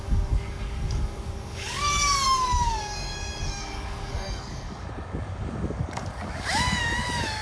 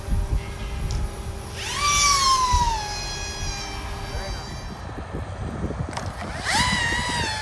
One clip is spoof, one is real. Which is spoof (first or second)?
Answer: first